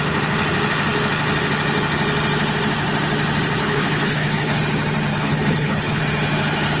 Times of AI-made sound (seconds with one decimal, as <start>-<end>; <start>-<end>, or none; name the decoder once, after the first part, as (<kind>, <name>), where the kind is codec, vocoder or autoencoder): 3.6-4.6 (codec, HILCodec); 5.1-6.0